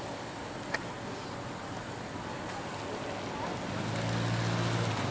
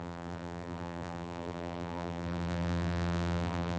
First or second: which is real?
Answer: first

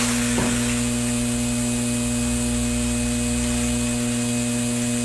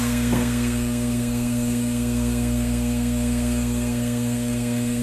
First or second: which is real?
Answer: first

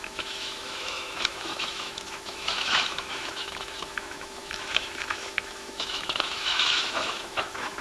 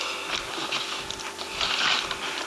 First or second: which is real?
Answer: second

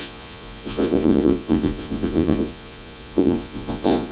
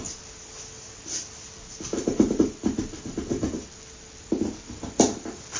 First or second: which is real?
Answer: second